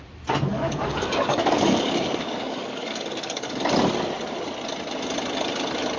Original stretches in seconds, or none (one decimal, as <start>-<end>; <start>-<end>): 0.0-0.5; 3.6-6.0